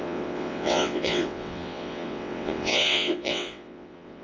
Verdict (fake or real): fake